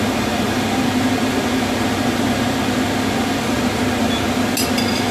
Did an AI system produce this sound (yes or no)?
no